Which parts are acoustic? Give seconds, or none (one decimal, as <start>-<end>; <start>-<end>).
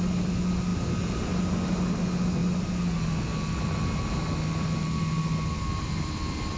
0.0-6.6